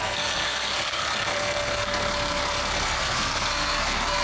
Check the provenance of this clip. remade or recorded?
remade